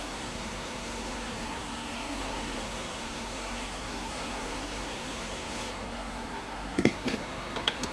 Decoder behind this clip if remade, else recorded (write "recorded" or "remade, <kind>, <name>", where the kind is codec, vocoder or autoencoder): remade, codec, SNAC